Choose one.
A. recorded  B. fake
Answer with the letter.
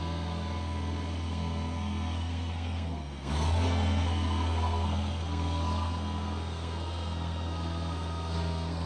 B